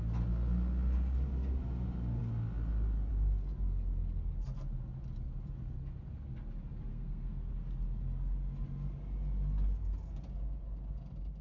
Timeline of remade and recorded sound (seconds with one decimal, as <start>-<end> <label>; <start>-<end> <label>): 0.0-6.9 recorded; 6.9-7.5 remade; 7.5-11.4 recorded